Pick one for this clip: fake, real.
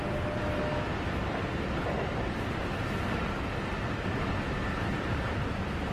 real